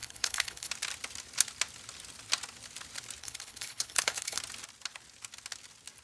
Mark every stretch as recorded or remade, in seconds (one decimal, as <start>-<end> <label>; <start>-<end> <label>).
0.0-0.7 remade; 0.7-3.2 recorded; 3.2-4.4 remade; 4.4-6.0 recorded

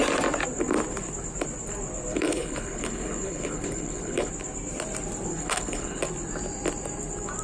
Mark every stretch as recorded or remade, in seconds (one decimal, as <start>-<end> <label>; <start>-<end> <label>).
0.0-2.1 recorded; 2.1-4.3 remade; 4.3-5.3 recorded; 5.3-6.0 remade; 6.0-7.4 recorded

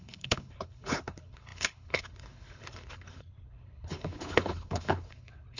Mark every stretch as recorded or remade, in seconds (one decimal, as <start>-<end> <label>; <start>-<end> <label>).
0.0-5.6 remade